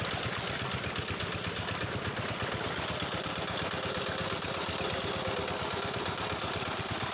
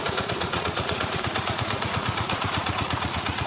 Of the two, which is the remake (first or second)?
second